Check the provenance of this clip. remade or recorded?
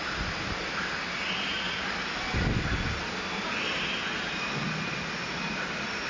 recorded